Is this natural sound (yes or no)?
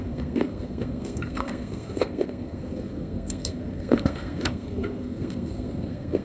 no